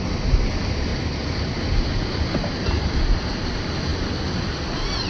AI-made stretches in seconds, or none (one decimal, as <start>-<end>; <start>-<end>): none